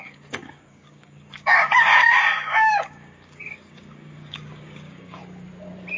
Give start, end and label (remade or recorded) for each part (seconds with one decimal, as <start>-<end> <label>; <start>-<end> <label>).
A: 0.0-5.2 remade; 5.2-6.0 recorded